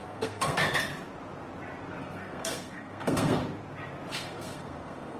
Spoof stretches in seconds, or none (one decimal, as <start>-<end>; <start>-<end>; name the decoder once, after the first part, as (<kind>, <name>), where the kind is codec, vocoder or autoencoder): 0.0-0.9 (codec, SNAC); 2.0-3.4; 4.1-5.2